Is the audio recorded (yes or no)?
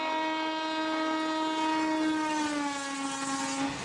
yes